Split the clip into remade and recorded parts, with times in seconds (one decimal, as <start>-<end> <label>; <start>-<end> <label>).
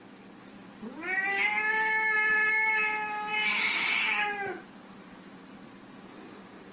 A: 0.0-6.7 recorded